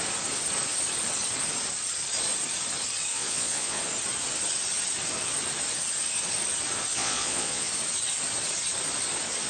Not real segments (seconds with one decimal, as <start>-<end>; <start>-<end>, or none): 3.1-3.8; 6.9-7.7